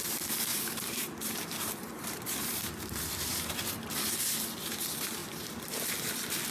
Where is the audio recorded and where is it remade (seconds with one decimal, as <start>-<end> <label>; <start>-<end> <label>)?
0.0-0.5 recorded; 0.5-4.1 remade; 4.1-6.5 recorded